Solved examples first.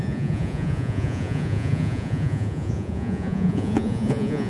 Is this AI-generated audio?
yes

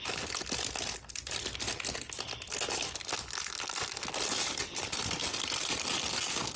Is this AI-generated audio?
no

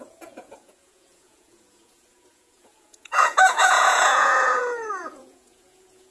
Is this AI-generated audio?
yes